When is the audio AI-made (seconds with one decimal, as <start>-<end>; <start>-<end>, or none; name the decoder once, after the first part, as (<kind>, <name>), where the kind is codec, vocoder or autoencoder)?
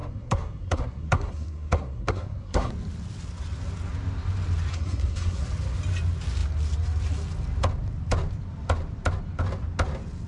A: 0.0-2.7 (codec, SNAC); 4.7-5.4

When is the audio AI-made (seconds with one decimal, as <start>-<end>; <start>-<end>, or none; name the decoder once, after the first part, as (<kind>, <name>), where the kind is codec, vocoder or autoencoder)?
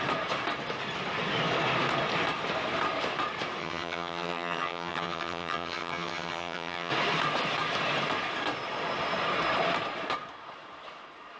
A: 3.6-6.9 (vocoder, HiFi-GAN)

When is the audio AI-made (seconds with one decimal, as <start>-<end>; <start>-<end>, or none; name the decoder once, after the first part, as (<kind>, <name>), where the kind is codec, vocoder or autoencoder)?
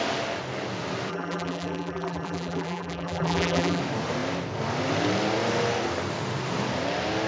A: 1.1-3.8 (vocoder, BigVGAN v2)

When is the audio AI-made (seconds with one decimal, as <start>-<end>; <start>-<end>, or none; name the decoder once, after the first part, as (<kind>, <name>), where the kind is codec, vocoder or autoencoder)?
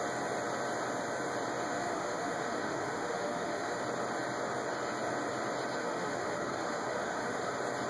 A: 1.7-3.8 (autoencoder, DAC-VAE); 5.8-7.5